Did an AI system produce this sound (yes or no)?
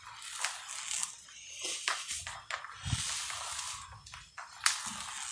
no